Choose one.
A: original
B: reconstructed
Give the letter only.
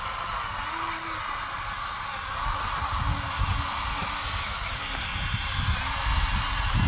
A